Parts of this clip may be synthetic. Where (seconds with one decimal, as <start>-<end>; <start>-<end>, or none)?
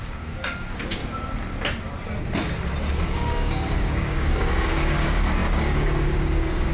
0.0-1.0; 3.0-6.7